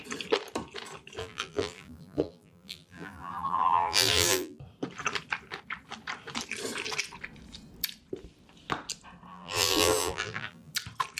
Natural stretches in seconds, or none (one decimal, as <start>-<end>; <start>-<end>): 0.0-1.2; 4.6-9.3; 10.7-11.2